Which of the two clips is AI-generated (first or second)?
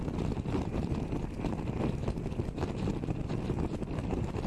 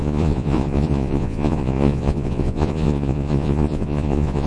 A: second